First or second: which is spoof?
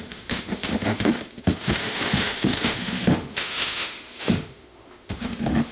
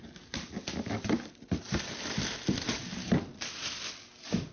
first